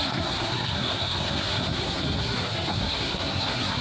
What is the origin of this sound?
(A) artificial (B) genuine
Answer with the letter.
A